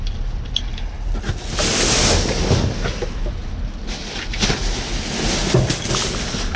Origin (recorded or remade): recorded